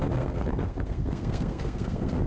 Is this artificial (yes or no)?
yes